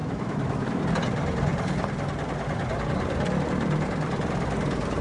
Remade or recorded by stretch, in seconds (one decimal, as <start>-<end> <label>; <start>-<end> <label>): 0.0-0.8 remade; 0.8-5.0 recorded